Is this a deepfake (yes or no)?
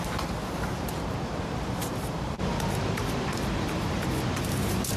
yes